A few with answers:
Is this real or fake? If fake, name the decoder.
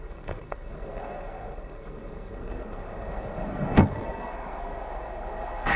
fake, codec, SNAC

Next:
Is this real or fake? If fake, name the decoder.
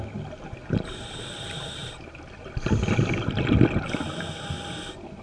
real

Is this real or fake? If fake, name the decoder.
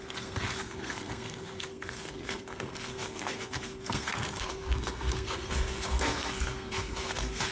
fake, codec, SNAC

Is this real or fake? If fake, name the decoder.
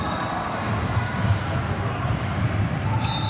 real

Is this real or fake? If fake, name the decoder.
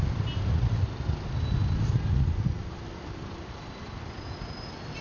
real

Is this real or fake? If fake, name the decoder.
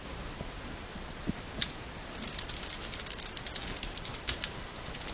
real